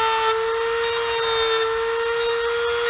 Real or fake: real